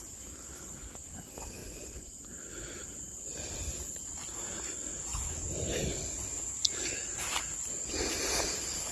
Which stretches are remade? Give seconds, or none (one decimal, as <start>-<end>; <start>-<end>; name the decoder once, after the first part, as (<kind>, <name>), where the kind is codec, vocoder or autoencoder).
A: 1.6-2.1 (vocoder, Vocos)